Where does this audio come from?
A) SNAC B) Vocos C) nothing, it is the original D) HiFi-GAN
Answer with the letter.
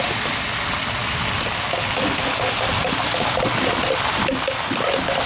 C